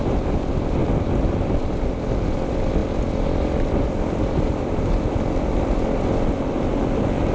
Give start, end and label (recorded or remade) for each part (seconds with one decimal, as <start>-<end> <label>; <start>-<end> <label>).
0.0-7.3 recorded